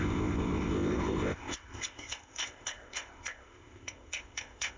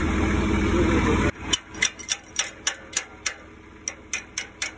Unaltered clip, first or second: second